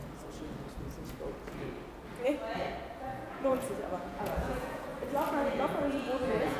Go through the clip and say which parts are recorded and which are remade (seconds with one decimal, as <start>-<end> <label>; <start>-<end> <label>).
0.0-3.0 recorded; 3.0-4.9 remade; 4.9-5.5 recorded; 5.5-6.6 remade